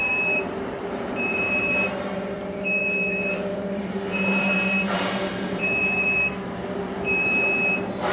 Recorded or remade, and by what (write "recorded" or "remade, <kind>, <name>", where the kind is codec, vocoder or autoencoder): remade, vocoder, BigVGAN v2